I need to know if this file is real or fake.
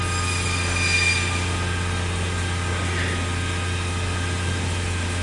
real